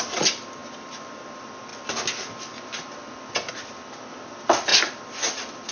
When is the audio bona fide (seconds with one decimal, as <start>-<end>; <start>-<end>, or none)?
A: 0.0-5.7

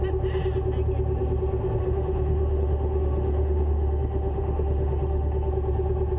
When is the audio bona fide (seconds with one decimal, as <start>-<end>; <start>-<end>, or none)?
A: 0.0-1.8; 5.5-6.2

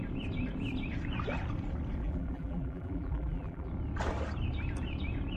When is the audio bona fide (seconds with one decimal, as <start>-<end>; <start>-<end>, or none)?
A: 0.0-2.0; 3.7-5.4

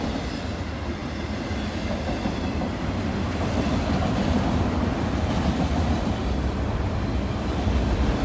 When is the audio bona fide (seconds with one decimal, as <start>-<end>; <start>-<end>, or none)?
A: 0.0-8.2

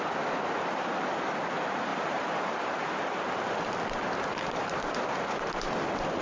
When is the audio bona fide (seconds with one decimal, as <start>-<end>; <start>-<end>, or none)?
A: 0.0-1.9; 3.1-6.2

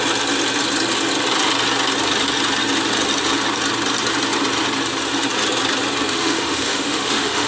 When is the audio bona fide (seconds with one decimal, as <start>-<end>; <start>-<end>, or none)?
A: 0.0-6.1